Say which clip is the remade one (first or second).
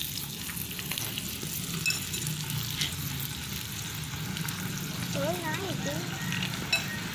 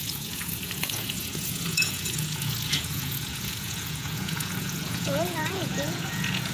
second